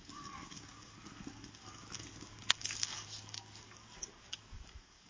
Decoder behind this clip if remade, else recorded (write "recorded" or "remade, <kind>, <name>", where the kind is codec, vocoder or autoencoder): remade, codec, DAC